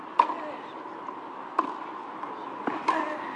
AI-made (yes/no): no